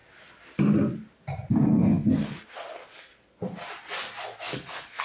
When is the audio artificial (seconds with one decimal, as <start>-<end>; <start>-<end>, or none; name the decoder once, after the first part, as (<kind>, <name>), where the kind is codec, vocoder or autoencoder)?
1.5-3.1 (codec, SNAC); 4.2-5.0